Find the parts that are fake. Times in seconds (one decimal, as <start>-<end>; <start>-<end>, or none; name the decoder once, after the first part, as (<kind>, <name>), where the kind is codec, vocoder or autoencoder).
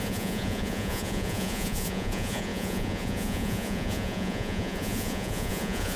0.0-6.0 (vocoder, Vocos)